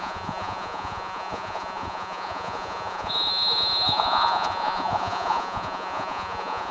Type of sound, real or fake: fake